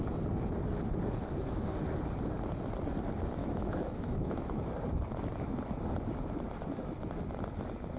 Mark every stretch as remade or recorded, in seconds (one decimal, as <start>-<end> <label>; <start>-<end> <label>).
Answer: 0.0-3.4 recorded; 3.4-4.6 remade; 4.6-8.0 recorded